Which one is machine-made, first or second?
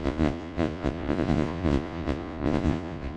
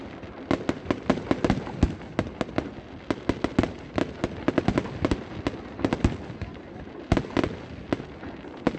first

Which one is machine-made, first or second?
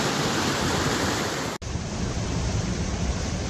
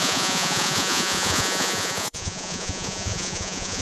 second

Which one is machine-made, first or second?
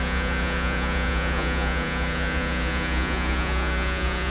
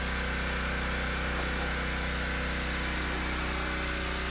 first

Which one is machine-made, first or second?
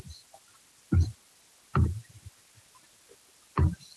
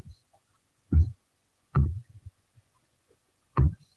second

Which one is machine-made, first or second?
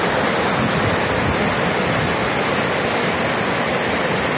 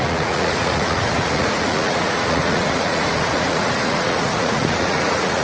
second